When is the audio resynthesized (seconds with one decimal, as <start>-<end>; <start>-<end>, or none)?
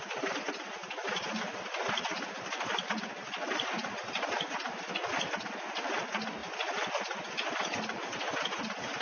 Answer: none